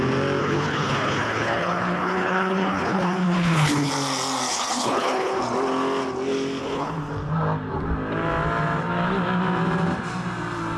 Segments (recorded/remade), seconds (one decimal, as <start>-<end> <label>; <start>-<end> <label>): 0.0-0.4 recorded; 0.4-3.9 remade; 3.9-4.5 recorded; 4.5-5.4 remade; 5.4-6.6 recorded; 6.6-7.1 remade; 7.1-10.8 recorded

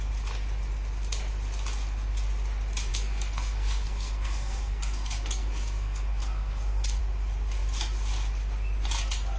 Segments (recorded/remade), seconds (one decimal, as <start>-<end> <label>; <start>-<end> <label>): 0.0-2.9 recorded; 2.9-7.0 remade; 7.0-9.4 recorded

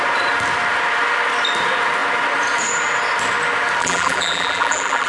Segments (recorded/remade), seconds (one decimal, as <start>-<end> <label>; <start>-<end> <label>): 0.0-3.8 recorded; 3.8-5.1 remade